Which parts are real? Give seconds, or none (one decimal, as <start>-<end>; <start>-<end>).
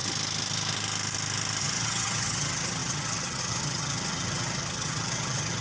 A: 0.0-1.6